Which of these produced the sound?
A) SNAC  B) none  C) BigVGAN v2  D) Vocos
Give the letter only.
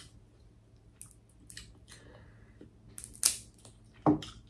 B